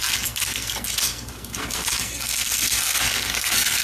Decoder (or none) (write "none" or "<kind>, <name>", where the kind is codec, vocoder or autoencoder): codec, SNAC